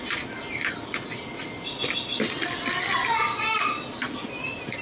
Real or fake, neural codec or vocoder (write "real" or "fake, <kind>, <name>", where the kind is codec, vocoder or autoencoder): real